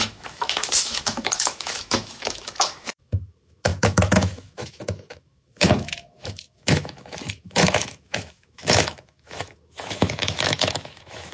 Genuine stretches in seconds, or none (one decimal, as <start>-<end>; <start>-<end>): none